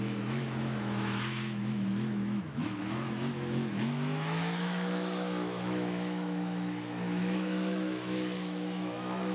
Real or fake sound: fake